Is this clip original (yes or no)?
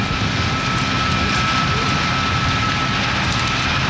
yes